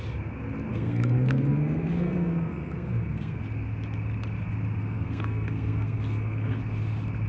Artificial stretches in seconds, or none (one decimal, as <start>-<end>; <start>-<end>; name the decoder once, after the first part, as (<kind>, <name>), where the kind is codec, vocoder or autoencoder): 0.7-3.4 (codec, SNAC); 4.8-6.6

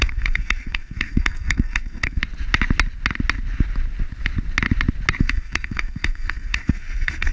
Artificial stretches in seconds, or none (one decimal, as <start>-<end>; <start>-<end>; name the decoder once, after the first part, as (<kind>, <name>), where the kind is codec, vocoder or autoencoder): 0.0-2.2 (codec, SNAC); 5.2-7.3

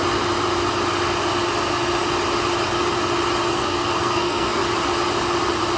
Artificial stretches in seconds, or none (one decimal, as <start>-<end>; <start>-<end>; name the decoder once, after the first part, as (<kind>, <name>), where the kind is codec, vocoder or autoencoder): 3.5-4.6 (codec, SNAC)

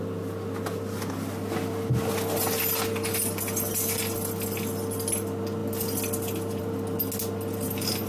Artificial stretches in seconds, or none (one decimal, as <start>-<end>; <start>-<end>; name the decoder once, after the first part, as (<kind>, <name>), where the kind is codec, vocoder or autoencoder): none

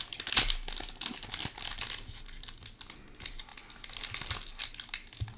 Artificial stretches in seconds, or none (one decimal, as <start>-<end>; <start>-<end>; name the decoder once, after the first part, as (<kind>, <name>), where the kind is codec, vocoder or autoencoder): none

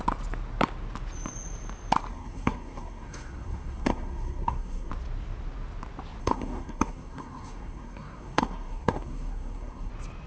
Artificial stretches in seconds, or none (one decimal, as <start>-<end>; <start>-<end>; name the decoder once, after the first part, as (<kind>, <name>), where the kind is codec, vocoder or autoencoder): 2.1-4.9 (codec, SNAC); 6.2-9.9